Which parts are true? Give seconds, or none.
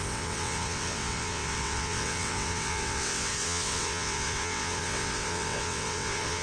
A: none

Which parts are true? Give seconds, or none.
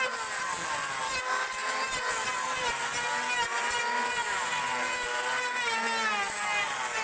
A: 0.0-7.0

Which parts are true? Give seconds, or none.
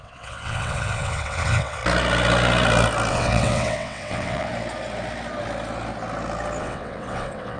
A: 1.8-3.1; 4.5-6.6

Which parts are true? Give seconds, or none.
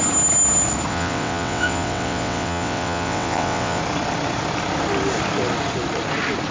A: 0.0-0.9; 3.8-6.5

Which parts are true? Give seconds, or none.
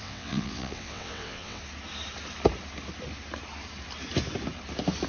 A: 1.6-5.1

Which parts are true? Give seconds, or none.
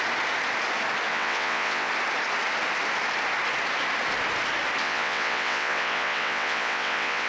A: 0.0-1.1; 1.9-4.8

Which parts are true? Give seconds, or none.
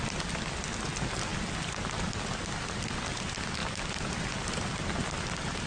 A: 0.0-5.7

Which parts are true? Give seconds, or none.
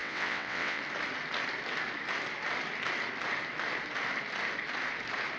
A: 0.8-5.4